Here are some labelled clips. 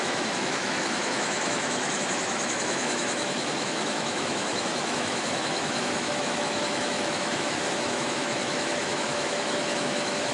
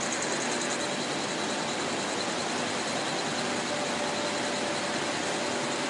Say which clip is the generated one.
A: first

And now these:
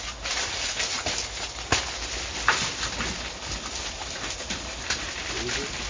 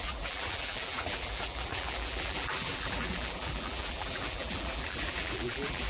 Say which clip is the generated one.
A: second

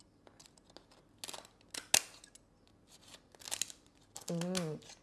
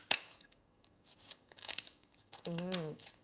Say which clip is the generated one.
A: second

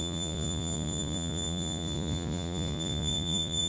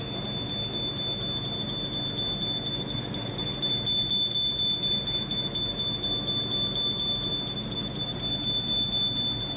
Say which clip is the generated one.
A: first